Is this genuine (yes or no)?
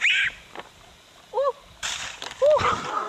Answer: yes